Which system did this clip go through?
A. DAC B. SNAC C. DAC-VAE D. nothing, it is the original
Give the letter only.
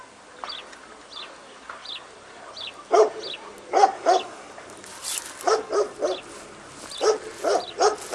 D